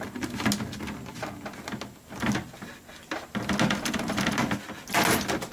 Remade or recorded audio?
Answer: recorded